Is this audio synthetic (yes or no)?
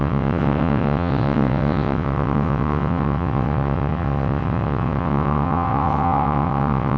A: yes